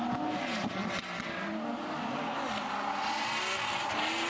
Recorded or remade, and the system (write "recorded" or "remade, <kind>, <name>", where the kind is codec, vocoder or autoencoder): recorded